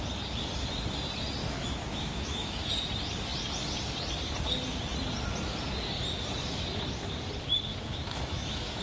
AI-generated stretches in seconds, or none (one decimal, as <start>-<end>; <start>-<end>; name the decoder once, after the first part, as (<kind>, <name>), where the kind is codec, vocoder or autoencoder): 1.4-2.7 (autoencoder, DAC-VAE); 7.7-8.8